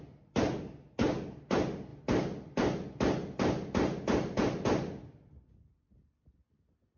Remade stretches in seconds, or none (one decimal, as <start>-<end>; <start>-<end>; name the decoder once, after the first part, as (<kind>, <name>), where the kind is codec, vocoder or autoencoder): 1.9-5.4 (vocoder, BigVGAN v2)